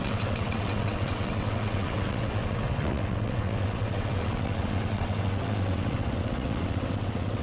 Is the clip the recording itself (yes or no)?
no